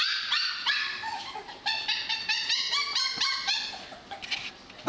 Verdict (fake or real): real